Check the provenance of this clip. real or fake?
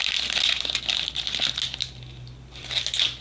real